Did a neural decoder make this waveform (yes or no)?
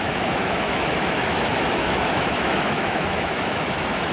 yes